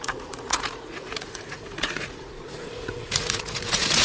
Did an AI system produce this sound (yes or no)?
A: yes